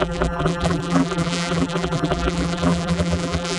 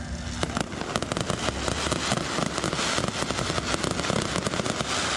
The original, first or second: second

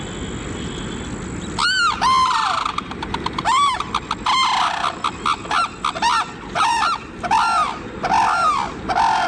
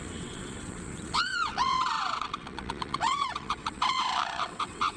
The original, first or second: first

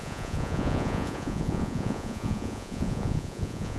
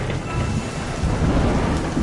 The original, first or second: second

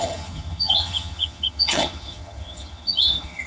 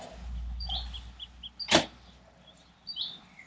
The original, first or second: second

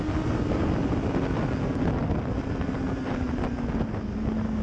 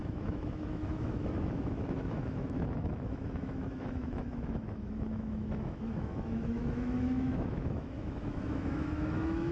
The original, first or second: first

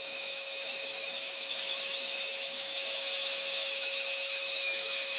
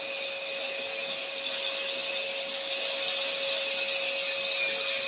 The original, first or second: second